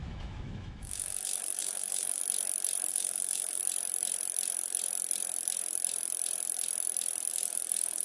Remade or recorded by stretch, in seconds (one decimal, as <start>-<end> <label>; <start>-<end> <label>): 0.0-2.2 remade; 2.2-2.9 recorded; 2.9-3.6 remade; 3.6-7.3 recorded; 7.3-8.0 remade